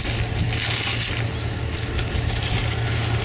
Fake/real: real